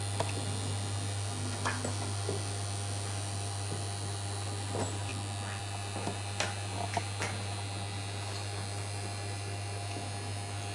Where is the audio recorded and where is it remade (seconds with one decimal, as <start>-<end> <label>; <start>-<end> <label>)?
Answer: 0.0-10.7 recorded